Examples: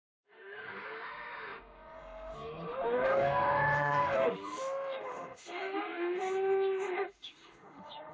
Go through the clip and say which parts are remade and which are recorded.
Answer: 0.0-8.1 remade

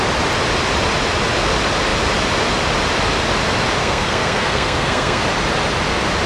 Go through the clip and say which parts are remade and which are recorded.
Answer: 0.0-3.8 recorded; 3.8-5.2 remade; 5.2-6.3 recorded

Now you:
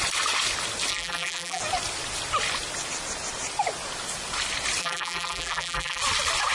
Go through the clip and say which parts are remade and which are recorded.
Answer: 0.0-0.9 recorded; 0.9-1.6 remade; 1.6-4.8 recorded; 4.8-6.0 remade; 6.0-6.5 recorded

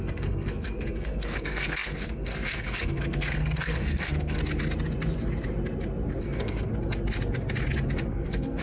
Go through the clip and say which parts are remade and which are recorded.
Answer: 0.0-4.4 remade; 4.4-6.2 recorded; 6.2-6.7 remade; 6.7-8.1 recorded; 8.1-8.6 remade

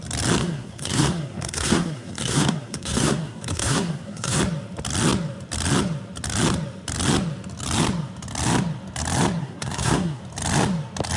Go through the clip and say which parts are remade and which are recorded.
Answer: 0.0-0.4 recorded; 0.4-4.4 remade; 4.4-9.4 recorded; 9.4-10.2 remade; 10.2-11.2 recorded

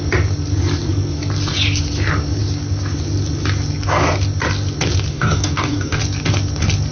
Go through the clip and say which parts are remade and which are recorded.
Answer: 0.0-5.1 recorded; 5.1-6.0 remade; 6.0-6.9 recorded